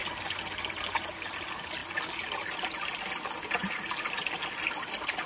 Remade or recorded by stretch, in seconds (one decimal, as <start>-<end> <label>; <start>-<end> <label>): 0.0-5.3 recorded